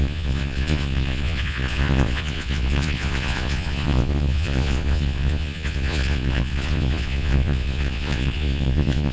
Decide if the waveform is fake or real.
fake